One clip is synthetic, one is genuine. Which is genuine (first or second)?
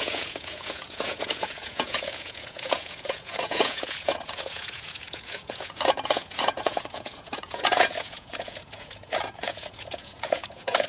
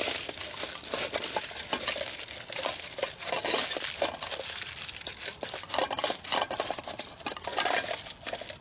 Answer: second